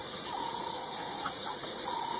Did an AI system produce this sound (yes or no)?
yes